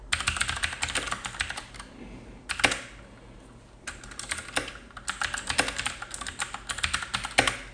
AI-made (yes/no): no